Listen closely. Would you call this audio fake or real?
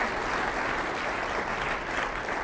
real